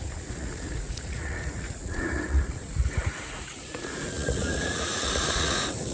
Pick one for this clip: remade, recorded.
remade